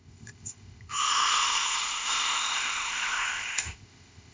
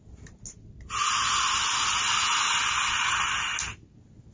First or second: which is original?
second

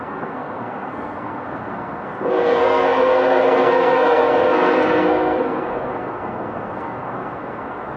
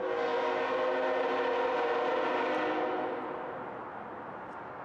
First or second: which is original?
second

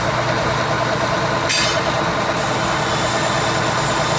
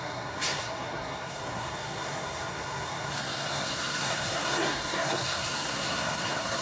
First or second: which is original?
first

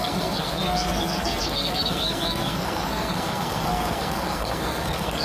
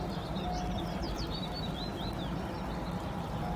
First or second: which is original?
second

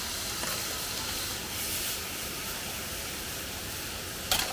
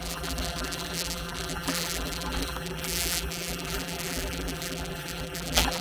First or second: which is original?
first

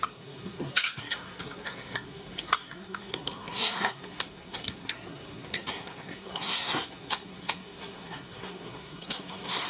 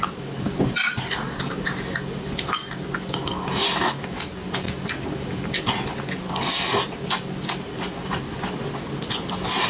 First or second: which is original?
second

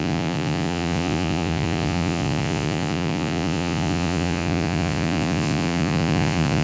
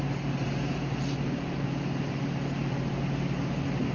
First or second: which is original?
second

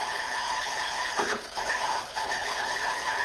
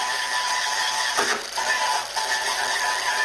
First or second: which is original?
second